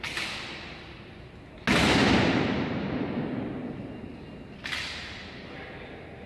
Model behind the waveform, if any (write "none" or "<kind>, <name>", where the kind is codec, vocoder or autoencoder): none